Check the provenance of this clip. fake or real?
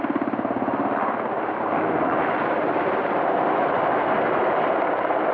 real